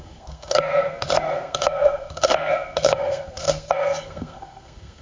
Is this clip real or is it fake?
fake